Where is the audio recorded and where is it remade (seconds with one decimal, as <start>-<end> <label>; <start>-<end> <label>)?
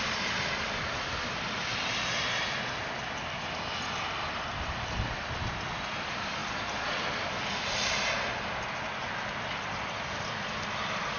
0.0-6.4 recorded; 6.4-7.8 remade; 7.8-11.2 recorded